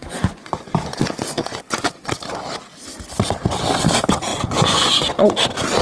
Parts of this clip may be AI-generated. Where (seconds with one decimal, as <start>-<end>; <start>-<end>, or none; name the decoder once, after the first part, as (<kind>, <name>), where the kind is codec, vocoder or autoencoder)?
0.0-2.1 (vocoder, Vocos); 4.3-5.3